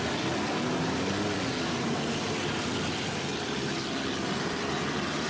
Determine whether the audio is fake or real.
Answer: real